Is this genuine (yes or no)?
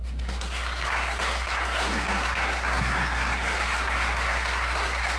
no